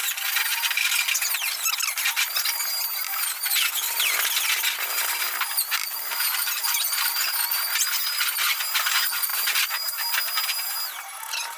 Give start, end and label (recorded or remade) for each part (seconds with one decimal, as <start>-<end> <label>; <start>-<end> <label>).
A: 0.0-5.8 recorded; 5.8-7.3 remade; 7.3-9.3 recorded; 9.3-10.1 remade; 10.1-11.6 recorded